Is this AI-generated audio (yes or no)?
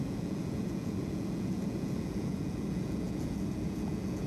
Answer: yes